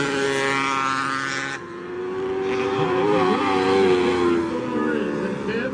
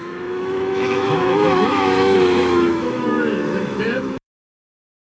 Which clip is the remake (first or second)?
second